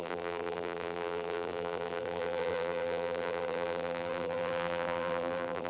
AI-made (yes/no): yes